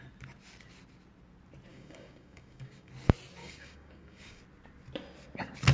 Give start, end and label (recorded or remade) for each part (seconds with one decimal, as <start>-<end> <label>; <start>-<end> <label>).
0.0-1.7 recorded; 1.7-2.9 remade; 2.9-3.4 recorded; 3.4-4.4 remade; 4.4-5.7 recorded